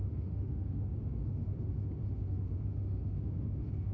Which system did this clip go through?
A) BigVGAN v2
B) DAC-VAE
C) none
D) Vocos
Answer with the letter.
B